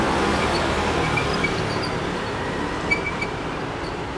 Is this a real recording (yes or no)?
no